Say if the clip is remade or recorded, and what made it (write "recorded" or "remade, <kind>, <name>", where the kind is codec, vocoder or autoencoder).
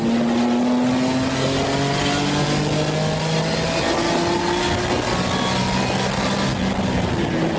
recorded